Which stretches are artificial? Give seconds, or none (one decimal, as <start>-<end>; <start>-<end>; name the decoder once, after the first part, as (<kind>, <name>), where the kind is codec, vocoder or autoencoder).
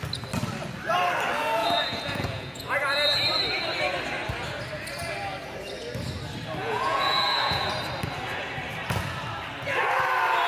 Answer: 1.6-2.7 (vocoder, Vocos); 6.6-7.7